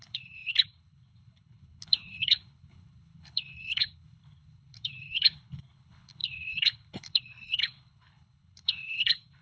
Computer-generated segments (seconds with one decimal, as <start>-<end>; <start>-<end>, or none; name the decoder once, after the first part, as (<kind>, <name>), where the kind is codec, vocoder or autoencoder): 0.0-9.4 (codec, HILCodec)